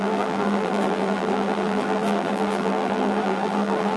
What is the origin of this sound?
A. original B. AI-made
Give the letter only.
B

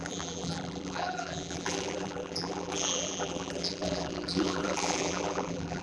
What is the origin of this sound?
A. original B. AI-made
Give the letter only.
B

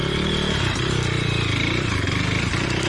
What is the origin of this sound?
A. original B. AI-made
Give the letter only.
B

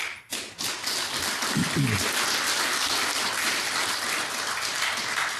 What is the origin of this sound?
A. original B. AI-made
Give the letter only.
A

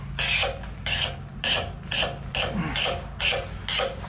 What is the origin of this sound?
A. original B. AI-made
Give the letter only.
A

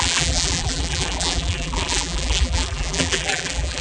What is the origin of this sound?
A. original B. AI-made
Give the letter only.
B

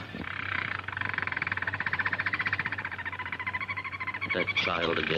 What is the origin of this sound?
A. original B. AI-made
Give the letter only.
B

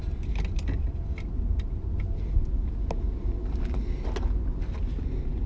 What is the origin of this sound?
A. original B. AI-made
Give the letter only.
A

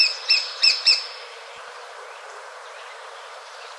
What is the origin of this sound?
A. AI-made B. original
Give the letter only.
A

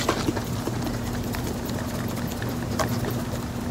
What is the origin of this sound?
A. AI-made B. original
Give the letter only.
B